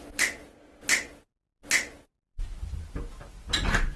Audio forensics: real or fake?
real